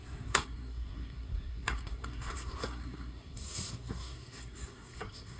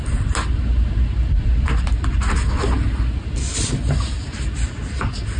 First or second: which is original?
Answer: second